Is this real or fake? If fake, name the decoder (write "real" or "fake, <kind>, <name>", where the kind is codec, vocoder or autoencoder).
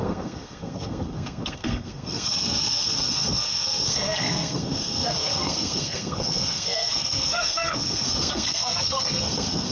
fake, codec, SNAC